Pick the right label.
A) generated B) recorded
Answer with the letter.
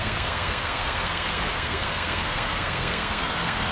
A